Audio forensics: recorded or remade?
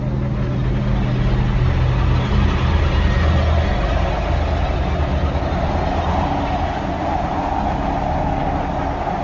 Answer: recorded